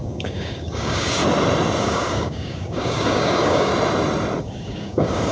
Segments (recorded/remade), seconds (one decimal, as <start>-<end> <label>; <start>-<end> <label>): 0.0-1.2 remade; 1.2-1.8 recorded; 1.8-3.7 remade; 3.7-4.4 recorded; 4.4-5.3 remade